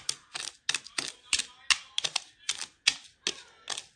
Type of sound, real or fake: real